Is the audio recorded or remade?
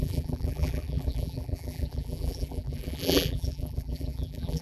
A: remade